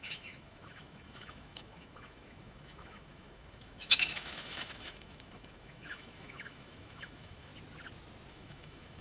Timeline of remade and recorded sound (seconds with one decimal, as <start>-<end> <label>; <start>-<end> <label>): 0.0-7.5 remade; 7.5-8.3 recorded; 8.3-9.0 remade